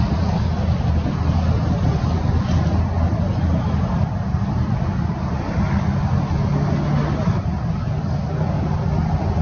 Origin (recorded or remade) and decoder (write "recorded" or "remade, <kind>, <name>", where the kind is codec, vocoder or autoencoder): recorded